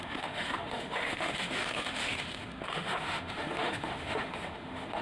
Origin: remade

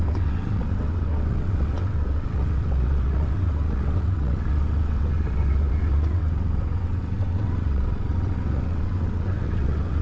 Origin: remade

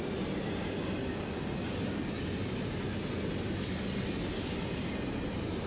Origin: recorded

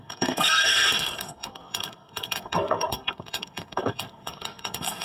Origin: remade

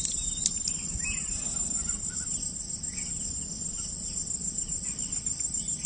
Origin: recorded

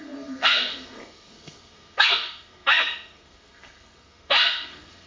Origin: remade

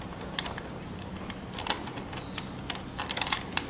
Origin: recorded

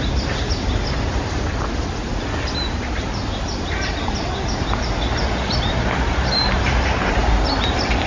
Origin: recorded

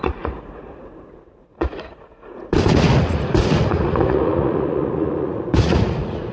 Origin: remade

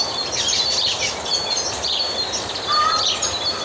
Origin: recorded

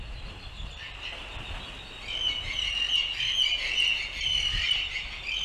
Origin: recorded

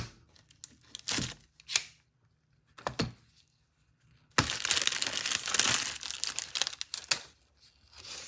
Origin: recorded